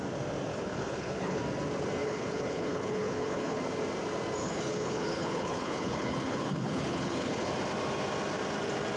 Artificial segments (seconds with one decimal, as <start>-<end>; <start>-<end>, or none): 0.5-1.4; 2.0-3.6; 4.4-7.5